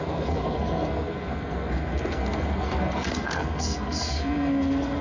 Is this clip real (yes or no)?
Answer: no